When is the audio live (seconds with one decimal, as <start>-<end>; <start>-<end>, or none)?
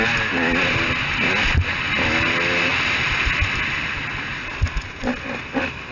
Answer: 0.0-5.9